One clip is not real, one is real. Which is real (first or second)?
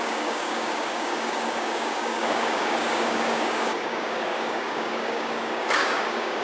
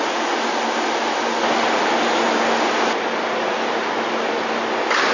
second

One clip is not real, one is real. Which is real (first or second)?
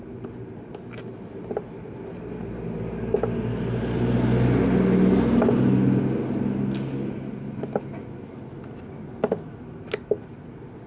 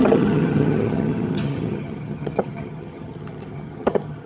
first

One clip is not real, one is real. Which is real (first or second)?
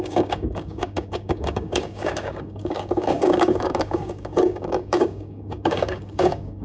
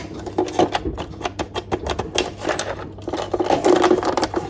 second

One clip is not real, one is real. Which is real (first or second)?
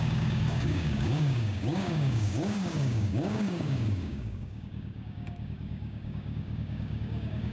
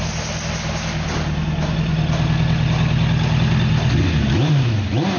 second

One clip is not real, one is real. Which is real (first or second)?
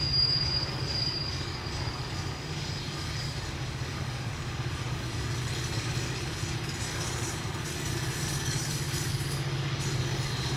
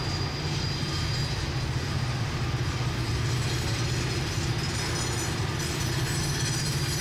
second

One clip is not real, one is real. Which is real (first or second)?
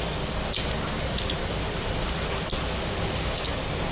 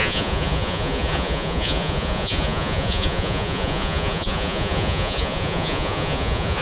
first